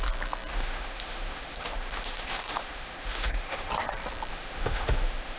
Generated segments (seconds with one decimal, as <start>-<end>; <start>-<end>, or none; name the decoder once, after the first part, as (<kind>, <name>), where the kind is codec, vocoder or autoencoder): 0.5-3.7 (autoencoder, DAC-VAE); 4.3-5.4

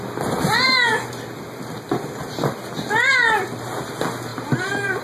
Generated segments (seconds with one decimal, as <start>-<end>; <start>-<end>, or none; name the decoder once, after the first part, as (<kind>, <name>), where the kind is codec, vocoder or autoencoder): 4.3-5.0 (vocoder, BigVGAN v2)

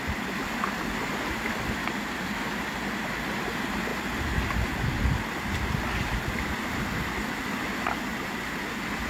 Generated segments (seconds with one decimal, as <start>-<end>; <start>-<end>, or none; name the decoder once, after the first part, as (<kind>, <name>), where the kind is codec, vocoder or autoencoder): none

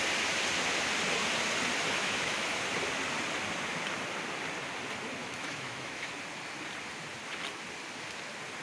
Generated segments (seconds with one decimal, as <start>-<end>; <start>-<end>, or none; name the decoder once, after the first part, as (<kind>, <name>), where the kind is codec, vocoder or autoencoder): 2.0-2.6 (autoencoder, DAC-VAE); 5.2-6.1

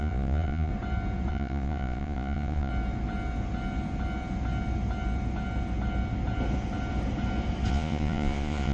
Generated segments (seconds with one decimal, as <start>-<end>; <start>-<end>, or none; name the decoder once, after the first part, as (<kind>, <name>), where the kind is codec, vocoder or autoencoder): 0.0-0.7 (vocoder, Vocos); 1.3-2.7; 7.7-8.7

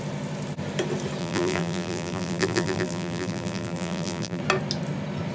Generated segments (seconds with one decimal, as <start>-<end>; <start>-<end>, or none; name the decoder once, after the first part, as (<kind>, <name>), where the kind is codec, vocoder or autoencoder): 1.2-4.4 (vocoder, BigVGAN v2)

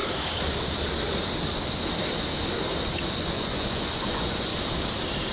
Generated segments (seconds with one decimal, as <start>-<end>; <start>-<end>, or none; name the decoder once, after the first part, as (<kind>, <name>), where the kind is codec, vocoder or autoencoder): 3.1-4.5 (vocoder, Vocos)

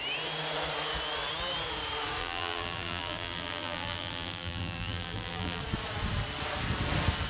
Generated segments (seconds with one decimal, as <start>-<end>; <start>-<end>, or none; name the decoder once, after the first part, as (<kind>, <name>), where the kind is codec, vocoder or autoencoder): 2.2-5.6 (vocoder, BigVGAN v2)